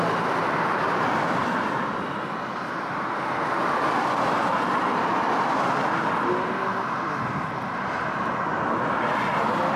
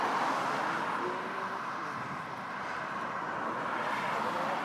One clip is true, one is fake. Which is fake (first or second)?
second